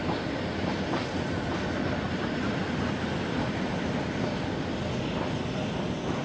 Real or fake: real